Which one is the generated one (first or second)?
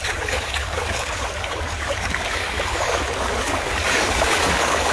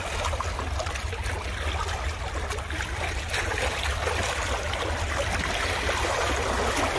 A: first